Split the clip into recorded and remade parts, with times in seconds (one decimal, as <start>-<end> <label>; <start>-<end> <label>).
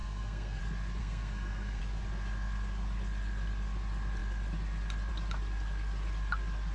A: 0.0-0.6 remade; 0.6-1.0 recorded; 1.0-1.8 remade; 1.8-6.7 recorded